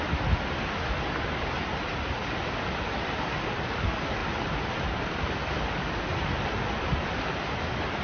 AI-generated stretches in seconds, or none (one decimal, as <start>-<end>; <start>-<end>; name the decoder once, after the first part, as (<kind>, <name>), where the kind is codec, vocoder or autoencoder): 2.2-2.9 (vocoder, BigVGAN v2); 4.2-5.5; 6.1-6.9